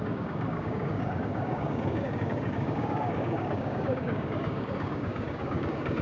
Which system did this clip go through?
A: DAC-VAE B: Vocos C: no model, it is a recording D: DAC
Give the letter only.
D